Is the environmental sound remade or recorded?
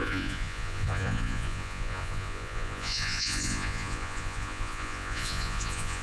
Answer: remade